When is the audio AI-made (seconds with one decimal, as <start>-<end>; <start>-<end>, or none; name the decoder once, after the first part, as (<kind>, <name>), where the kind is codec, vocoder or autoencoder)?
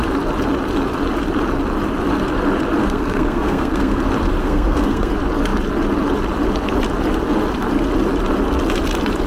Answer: 2.8-4.0 (codec, SNAC); 4.4-5.1